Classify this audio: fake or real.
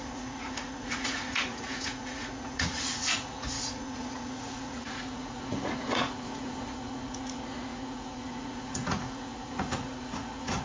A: fake